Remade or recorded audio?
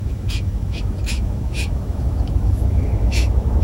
remade